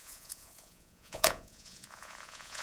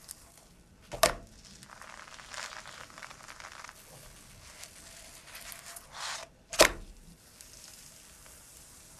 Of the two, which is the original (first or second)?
second